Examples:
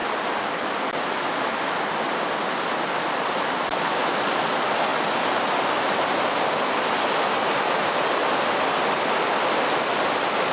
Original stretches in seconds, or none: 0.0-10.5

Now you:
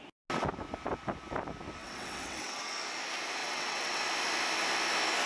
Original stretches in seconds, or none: 0.0-1.8; 2.7-3.4; 4.0-5.3

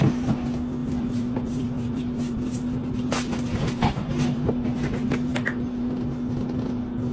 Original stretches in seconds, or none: 0.0-0.8; 4.5-5.3; 5.8-7.1

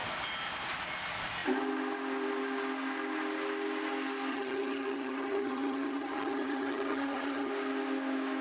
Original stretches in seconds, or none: 0.0-4.3; 7.5-8.4